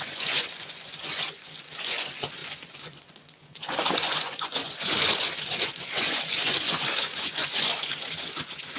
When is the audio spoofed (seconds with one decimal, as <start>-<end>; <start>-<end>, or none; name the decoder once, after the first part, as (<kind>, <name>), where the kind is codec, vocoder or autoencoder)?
0.0-8.8 (vocoder, Vocos)